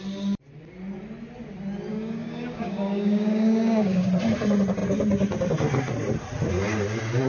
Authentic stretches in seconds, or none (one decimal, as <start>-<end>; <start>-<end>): 0.0-1.9; 4.1-7.3